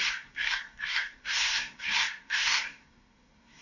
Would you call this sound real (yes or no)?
no